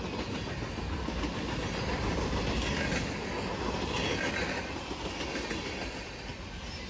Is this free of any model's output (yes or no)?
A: yes